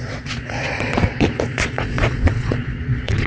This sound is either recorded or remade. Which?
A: remade